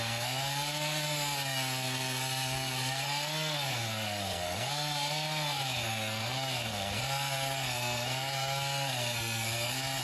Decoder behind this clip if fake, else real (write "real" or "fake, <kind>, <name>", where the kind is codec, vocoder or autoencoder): fake, codec, SNAC